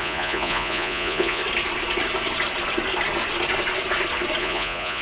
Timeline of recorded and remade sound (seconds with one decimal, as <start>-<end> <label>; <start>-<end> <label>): 0.0-1.4 remade; 1.4-4.4 recorded; 4.4-5.0 remade